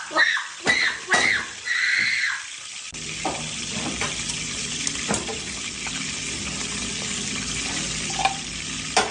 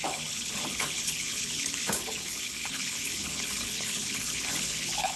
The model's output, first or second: second